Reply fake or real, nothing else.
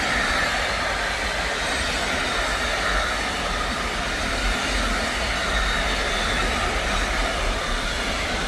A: real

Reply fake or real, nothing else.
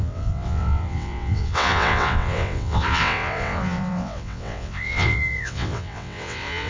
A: fake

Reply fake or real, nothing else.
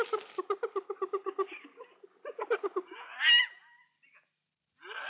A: real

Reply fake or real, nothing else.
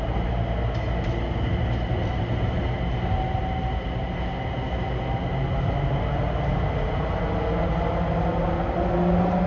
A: real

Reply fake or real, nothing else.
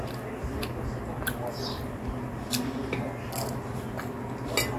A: real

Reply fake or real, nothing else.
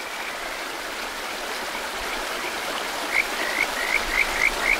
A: real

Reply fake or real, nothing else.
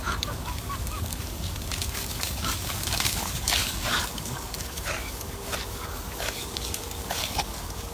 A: fake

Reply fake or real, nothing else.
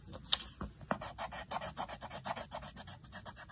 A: real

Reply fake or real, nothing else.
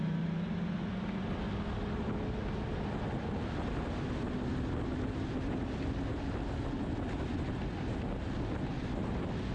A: real